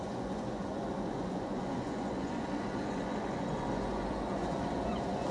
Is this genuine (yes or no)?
no